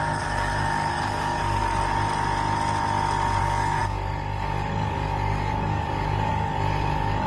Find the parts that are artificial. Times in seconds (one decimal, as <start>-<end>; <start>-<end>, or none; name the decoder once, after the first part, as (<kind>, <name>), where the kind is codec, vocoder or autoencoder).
0.0-1.6 (codec, DAC); 3.4-7.3